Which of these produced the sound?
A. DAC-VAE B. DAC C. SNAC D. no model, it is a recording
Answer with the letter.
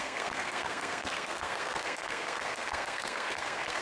C